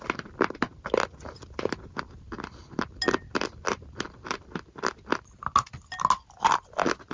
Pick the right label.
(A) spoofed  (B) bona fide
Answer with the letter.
B